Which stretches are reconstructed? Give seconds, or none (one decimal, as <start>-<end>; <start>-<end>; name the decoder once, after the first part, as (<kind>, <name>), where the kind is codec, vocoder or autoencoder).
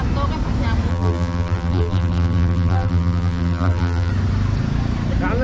0.9-4.1 (vocoder, BigVGAN v2)